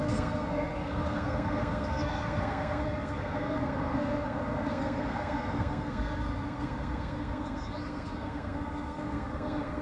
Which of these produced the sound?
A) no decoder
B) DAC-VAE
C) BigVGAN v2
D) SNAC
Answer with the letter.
D